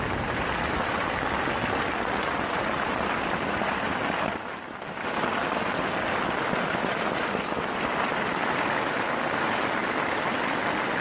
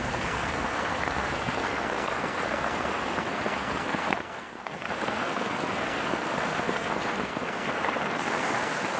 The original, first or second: first